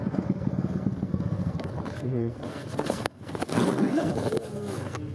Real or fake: fake